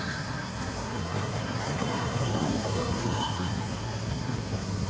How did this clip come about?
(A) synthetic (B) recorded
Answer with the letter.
A